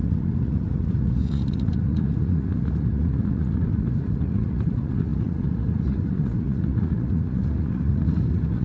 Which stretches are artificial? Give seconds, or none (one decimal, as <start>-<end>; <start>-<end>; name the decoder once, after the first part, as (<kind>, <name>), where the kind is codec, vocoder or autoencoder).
0.0-8.6 (vocoder, Vocos)